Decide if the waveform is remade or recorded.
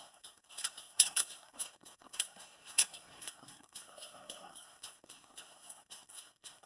remade